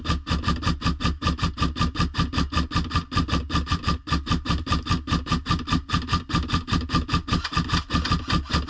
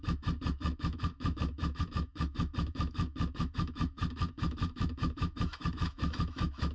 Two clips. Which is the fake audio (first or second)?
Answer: second